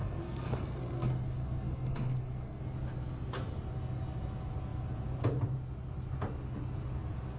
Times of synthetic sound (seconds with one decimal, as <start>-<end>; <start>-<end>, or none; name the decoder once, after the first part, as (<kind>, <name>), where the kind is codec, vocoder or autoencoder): 0.0-2.6 (codec, SNAC)